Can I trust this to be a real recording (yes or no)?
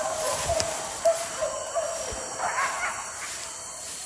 no